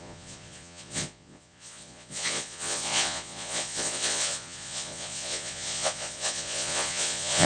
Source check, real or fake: fake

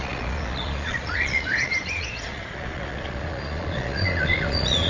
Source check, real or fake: fake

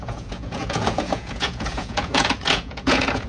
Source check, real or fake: fake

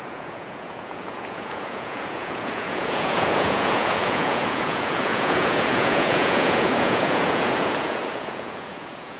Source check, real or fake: fake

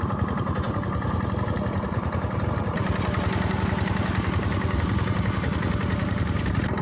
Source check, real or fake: real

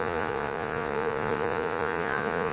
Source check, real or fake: fake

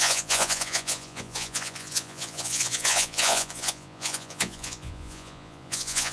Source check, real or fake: fake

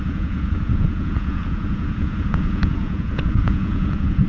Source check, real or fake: fake